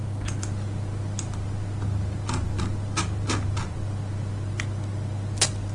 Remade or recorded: recorded